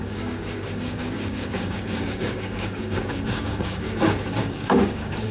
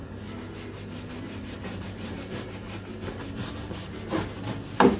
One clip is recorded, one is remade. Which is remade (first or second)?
first